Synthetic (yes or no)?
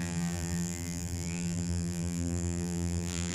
yes